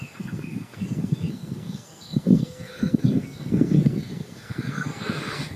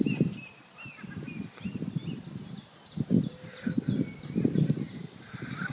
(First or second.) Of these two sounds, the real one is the second